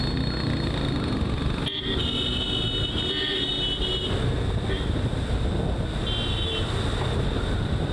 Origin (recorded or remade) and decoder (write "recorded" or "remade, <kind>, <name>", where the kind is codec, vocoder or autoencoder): recorded